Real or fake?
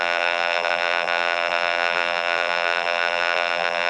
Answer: fake